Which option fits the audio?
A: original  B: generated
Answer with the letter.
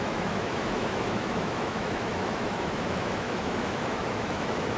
B